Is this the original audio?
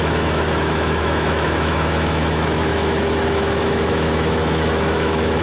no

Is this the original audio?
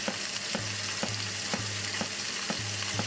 yes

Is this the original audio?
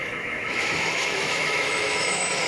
no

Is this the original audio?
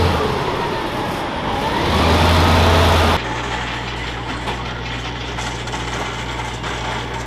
yes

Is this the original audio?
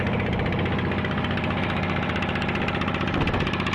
yes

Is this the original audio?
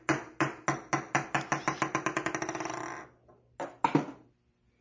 yes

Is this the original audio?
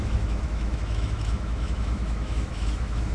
no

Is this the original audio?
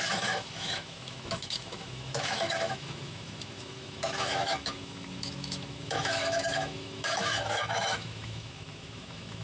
no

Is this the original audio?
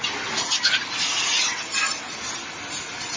yes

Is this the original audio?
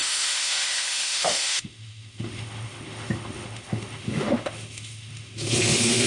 no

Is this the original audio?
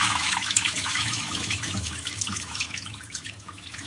no